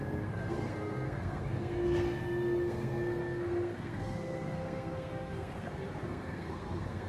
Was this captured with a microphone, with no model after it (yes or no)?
no